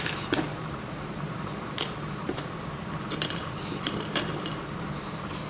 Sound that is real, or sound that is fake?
fake